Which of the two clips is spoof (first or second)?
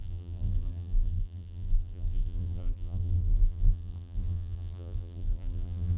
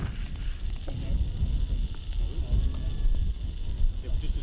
first